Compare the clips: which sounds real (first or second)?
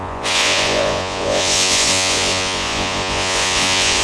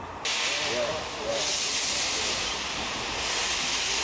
second